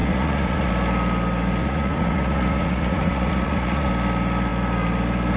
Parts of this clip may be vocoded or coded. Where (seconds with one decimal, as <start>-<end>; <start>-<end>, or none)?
0.0-0.7; 1.6-3.9